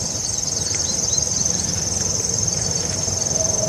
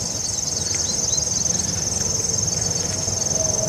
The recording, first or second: second